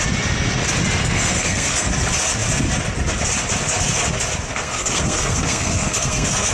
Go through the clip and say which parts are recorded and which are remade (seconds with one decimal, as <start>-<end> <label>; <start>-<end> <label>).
0.0-1.0 recorded; 1.0-1.9 remade; 1.9-4.5 recorded; 4.5-6.5 remade